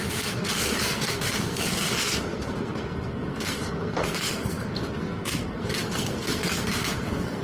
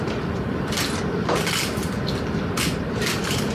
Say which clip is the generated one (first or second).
first